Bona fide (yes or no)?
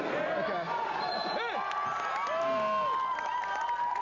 yes